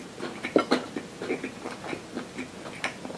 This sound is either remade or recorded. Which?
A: recorded